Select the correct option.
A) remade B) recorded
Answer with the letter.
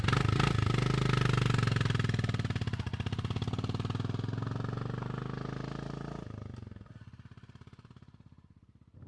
B